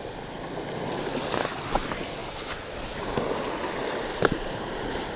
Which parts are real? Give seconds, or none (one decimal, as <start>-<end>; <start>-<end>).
0.0-5.2